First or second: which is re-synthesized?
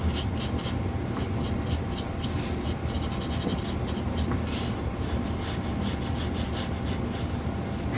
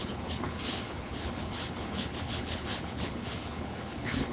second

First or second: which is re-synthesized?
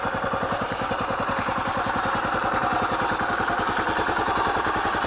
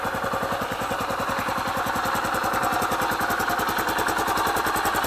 first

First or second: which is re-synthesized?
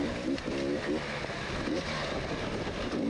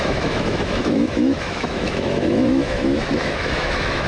second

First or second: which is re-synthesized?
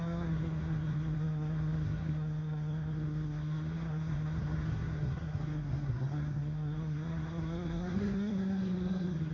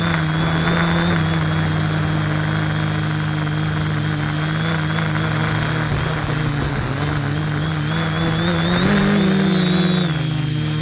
first